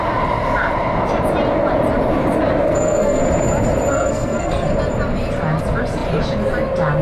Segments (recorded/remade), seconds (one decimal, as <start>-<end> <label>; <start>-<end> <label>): 0.0-2.7 recorded; 2.7-3.2 remade; 3.2-3.9 recorded; 3.9-4.7 remade; 4.7-7.0 recorded